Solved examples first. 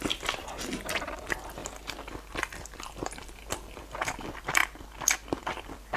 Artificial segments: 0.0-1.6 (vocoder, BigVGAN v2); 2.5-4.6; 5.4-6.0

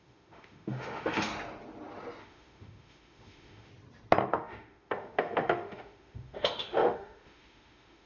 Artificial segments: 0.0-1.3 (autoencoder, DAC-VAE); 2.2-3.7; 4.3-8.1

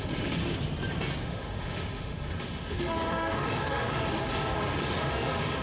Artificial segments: 0.0-0.4 (autoencoder, DAC-VAE); 1.2-5.6